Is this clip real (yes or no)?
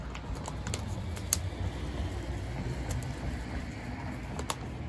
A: yes